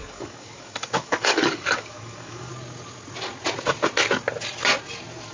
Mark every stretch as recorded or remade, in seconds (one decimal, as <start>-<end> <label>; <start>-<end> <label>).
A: 0.0-2.5 remade; 2.5-5.3 recorded